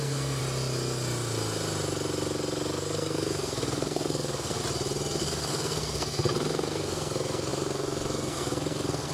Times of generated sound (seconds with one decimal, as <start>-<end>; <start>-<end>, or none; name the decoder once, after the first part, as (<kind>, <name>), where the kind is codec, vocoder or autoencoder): 0.0-0.4 (codec, SNAC); 2.8-4.6; 5.2-9.1